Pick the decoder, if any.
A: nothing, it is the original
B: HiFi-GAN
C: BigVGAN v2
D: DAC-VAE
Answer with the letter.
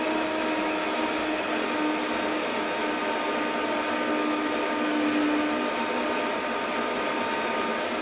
A